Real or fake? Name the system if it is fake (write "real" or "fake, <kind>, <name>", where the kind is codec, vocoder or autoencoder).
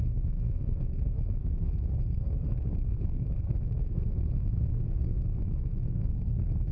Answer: fake, codec, SNAC